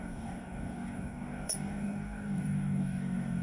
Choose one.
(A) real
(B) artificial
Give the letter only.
B